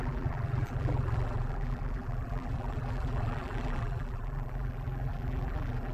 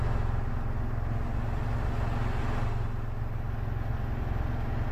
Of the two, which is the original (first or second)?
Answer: second